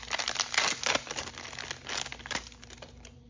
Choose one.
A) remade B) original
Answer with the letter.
B